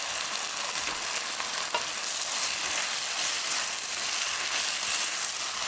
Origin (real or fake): real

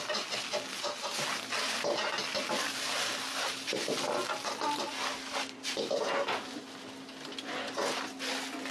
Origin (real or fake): real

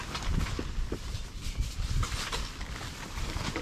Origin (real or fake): real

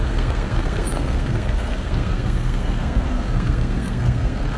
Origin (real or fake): fake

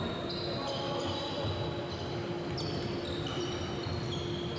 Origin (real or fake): real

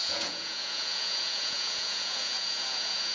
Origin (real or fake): fake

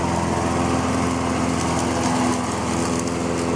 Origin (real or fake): real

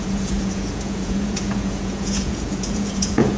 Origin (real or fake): fake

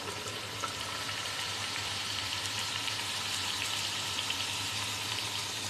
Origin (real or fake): real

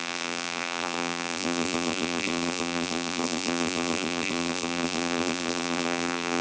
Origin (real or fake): fake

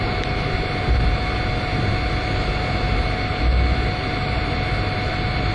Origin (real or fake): real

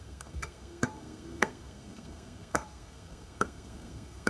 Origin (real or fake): fake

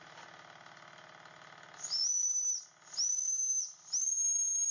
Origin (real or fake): real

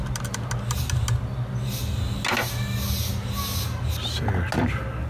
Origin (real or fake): real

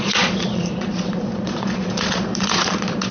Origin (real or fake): fake